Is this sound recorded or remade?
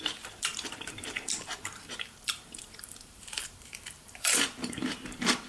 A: remade